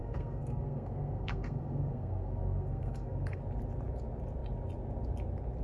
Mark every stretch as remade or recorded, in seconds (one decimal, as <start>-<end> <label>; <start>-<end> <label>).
0.0-3.4 remade; 3.4-5.6 recorded